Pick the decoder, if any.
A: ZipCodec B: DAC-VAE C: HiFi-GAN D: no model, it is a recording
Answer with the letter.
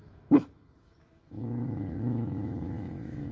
B